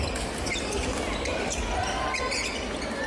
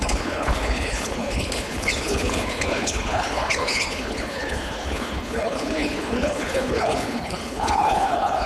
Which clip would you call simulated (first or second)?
second